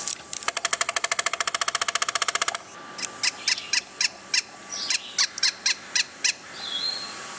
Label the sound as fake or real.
real